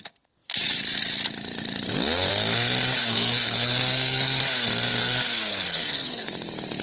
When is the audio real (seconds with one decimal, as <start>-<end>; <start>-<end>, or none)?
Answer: 0.0-3.0; 4.4-5.0; 6.3-6.8